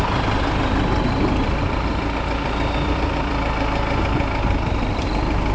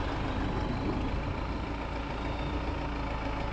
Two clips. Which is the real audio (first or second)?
second